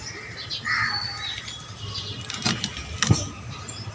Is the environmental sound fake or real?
real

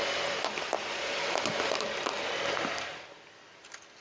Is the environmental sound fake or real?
real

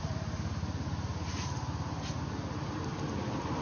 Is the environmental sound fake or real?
real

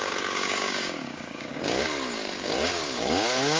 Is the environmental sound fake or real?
fake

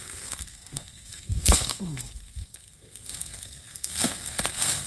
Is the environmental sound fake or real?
fake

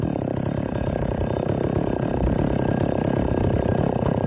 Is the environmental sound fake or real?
real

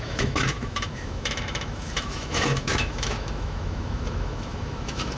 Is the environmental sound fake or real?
fake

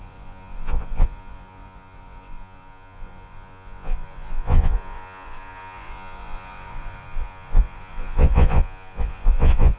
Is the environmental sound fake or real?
fake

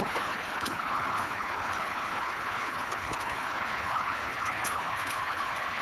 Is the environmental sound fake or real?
fake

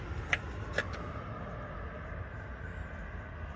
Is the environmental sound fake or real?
real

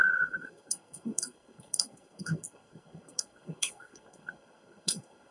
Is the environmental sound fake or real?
fake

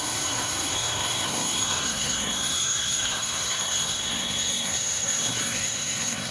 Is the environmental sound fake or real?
fake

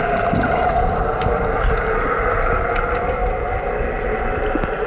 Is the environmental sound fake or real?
real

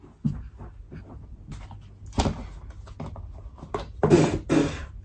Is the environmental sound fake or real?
real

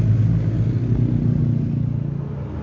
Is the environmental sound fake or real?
real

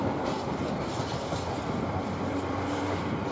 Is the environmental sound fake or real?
fake